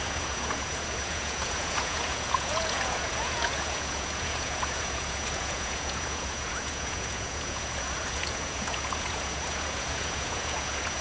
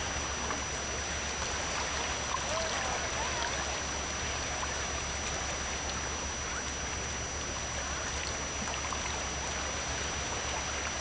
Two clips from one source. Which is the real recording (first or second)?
second